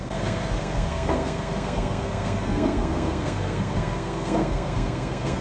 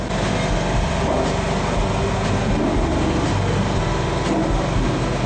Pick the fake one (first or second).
first